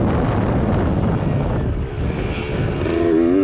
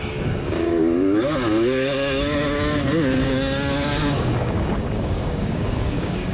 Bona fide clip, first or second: first